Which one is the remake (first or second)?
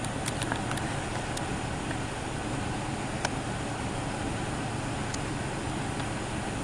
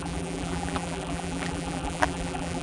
second